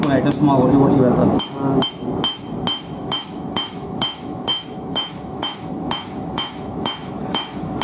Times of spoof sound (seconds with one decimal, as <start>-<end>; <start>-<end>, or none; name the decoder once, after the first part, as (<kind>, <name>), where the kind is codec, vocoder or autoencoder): 1.2-1.9 (autoencoder, DAC-VAE); 2.7-7.8